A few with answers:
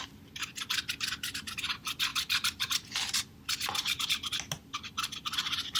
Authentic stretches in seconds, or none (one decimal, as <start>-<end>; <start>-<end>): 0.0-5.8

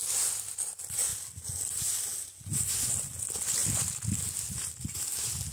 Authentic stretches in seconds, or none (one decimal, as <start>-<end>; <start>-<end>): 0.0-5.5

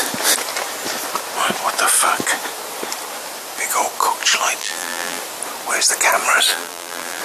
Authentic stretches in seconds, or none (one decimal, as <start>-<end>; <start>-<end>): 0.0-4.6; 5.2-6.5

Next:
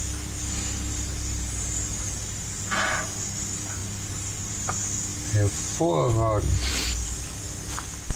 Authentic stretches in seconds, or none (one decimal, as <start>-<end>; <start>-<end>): 0.0-8.2